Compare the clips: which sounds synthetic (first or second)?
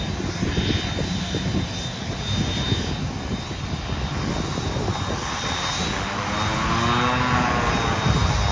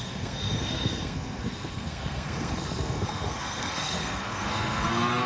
second